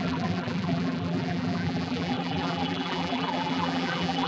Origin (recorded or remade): remade